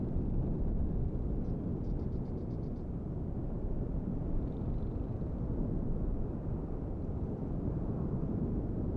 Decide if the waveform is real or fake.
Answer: fake